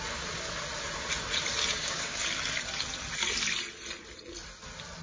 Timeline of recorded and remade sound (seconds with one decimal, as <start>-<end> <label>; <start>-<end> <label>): 0.0-1.7 recorded; 1.7-2.2 remade; 2.2-5.0 recorded